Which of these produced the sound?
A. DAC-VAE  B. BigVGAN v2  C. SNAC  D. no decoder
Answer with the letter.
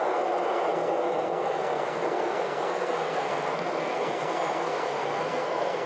C